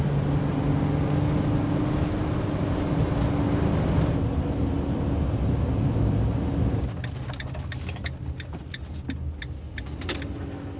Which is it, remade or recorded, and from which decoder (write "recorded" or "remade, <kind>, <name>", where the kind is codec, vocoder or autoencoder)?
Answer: recorded